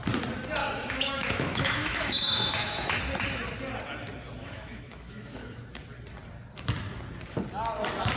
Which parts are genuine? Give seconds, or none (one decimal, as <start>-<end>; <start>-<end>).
0.0-0.6; 3.0-4.4; 5.6-8.2

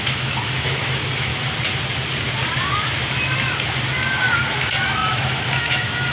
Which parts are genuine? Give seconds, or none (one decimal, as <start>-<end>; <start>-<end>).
1.3-4.2

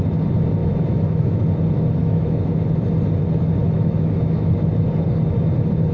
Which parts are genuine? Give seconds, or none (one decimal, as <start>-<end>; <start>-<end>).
0.0-0.6; 1.4-2.0; 2.7-3.6; 4.5-5.9

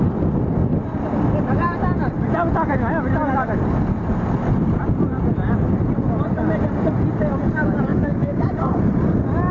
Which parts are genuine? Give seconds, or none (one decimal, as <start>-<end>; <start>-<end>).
0.0-7.9; 8.4-9.5

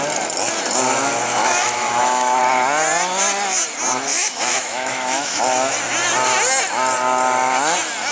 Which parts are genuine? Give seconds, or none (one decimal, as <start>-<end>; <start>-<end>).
0.0-1.4; 2.4-4.1; 5.4-8.1

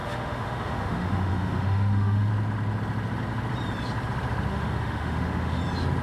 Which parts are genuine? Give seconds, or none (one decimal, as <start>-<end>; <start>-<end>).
2.3-4.5; 5.6-6.0